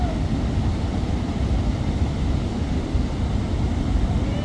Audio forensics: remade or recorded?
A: remade